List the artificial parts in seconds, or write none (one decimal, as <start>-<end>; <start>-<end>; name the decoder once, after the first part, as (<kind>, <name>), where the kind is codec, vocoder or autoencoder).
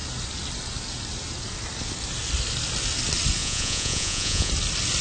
3.4-4.5 (vocoder, Vocos)